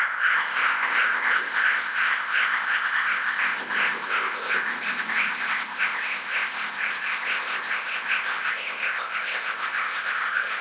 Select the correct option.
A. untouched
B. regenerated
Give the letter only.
B